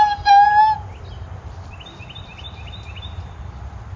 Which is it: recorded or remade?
recorded